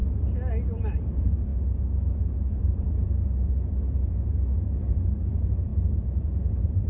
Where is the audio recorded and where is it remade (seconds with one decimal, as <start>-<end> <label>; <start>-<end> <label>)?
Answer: 0.0-0.8 recorded; 0.8-1.5 remade; 1.5-2.5 recorded; 2.5-6.9 remade

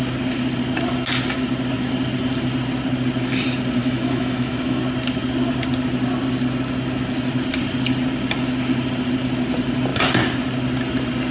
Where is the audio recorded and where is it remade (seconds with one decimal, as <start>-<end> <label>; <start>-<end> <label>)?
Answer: 0.0-3.8 recorded; 3.8-4.8 remade; 4.8-11.3 recorded

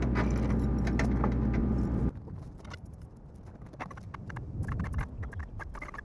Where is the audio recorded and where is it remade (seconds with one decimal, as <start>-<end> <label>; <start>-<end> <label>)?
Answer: 0.0-1.6 recorded; 1.6-3.1 remade; 3.1-6.0 recorded

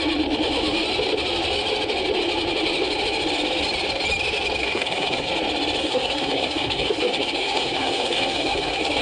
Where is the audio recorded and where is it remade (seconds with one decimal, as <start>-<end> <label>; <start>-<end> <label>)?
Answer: 0.0-4.6 recorded; 4.6-5.3 remade; 5.3-5.8 recorded; 5.8-9.0 remade

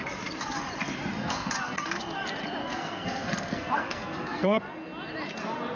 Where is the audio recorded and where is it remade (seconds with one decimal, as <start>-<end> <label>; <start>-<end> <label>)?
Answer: 0.0-1.2 recorded; 1.2-2.0 remade; 2.0-2.6 recorded; 2.6-4.6 remade; 4.6-5.8 recorded

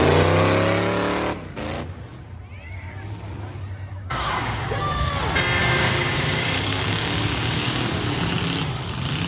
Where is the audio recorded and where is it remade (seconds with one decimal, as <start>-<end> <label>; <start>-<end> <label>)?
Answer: 0.0-3.9 recorded; 3.9-5.1 remade; 5.1-5.6 recorded; 5.6-8.0 remade; 8.0-9.3 recorded

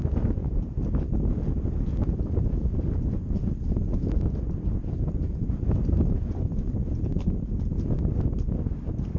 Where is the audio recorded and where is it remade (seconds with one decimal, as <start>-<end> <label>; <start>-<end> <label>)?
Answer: 0.0-9.2 recorded